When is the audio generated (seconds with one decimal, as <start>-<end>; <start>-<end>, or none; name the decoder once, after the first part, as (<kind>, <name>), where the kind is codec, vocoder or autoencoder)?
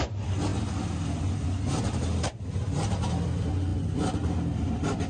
none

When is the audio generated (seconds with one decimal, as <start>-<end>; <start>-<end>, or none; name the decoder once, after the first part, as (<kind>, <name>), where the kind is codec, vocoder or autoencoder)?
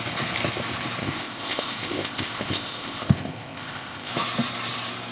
1.0-4.1 (codec, ZipCodec)